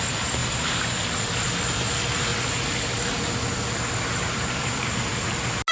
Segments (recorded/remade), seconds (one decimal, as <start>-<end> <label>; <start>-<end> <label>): 0.0-2.3 remade; 2.3-4.5 recorded; 4.5-5.1 remade; 5.1-5.7 recorded